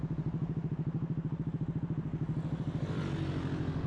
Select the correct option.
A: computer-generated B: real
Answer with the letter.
B